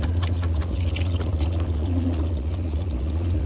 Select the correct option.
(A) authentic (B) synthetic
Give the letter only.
B